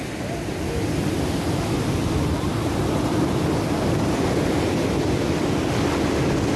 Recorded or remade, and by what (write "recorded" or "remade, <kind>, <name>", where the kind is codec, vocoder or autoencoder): recorded